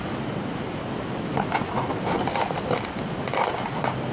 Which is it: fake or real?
real